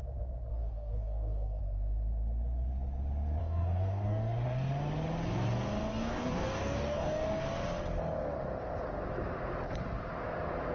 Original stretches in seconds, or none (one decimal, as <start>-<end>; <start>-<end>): 0.0-0.5; 1.6-3.4; 4.7-5.9; 7.4-10.7